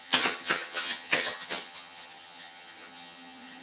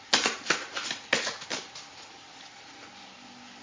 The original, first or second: second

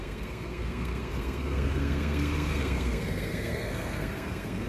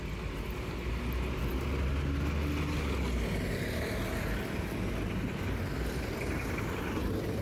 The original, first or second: second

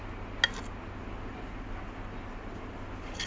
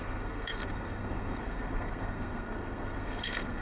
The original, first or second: first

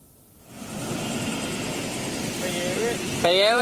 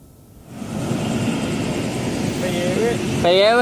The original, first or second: second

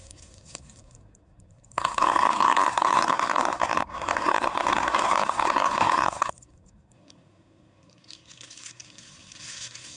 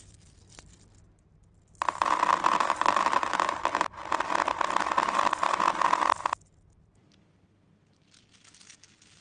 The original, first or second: second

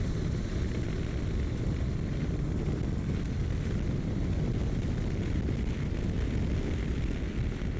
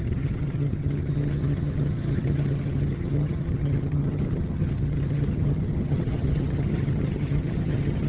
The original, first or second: first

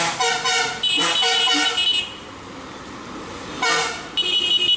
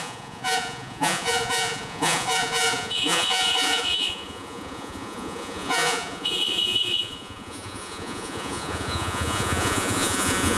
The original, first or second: first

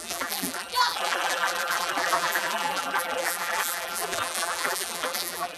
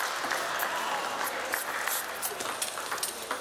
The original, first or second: second